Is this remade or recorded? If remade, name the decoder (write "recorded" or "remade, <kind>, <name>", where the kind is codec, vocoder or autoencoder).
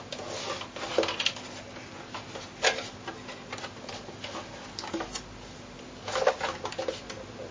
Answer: recorded